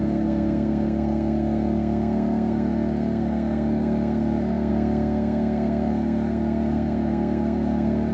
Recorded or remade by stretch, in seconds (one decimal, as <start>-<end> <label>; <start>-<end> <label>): 0.0-8.1 remade